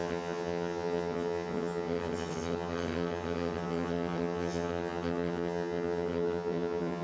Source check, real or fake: fake